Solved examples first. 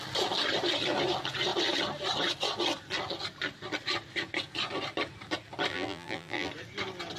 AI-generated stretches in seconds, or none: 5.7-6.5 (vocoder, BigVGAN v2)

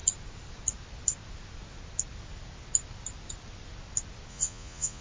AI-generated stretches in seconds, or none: 4.3-5.0 (vocoder, Vocos)

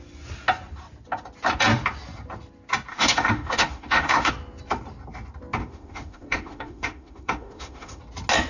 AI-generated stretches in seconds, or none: 2.9-4.3 (autoencoder, DAC-VAE); 5.6-8.0